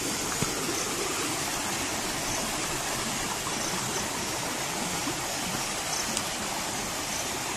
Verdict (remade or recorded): recorded